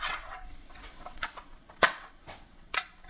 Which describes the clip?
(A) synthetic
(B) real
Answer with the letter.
A